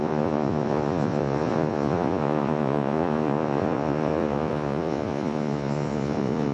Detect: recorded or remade remade